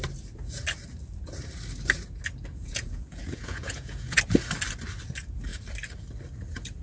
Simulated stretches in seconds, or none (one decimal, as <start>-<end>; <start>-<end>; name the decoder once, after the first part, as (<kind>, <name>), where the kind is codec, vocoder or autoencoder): 2.5-4.2 (vocoder, Vocos)